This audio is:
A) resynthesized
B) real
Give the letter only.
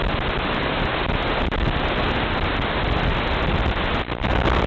B